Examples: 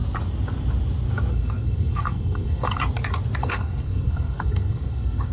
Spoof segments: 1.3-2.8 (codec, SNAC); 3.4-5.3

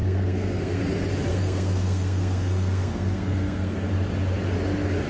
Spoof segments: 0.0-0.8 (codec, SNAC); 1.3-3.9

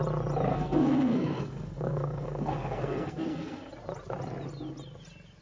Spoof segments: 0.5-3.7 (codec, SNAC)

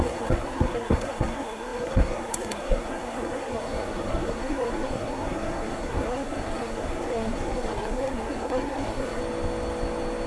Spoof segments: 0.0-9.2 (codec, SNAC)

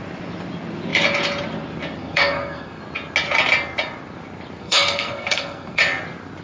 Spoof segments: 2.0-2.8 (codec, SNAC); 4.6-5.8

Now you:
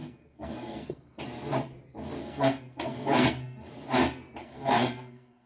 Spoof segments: 0.0-1.2 (codec, SNAC); 2.2-3.7; 4.4-5.5

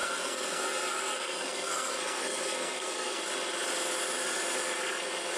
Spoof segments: 0.0-3.2 (codec, SNAC)

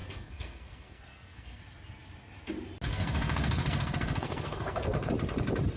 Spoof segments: 0.0-1.6 (codec, SNAC); 2.9-5.1